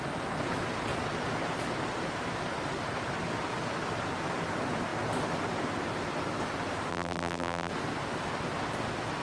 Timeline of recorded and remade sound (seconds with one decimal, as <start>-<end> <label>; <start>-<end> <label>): 0.0-6.9 recorded; 6.9-7.7 remade; 7.7-9.2 recorded